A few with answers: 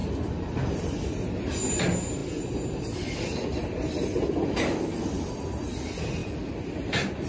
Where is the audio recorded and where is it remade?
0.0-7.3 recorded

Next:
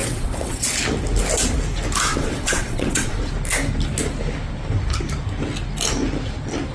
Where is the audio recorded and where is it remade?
0.0-0.7 remade; 0.7-2.1 recorded; 2.1-3.2 remade; 3.2-6.7 recorded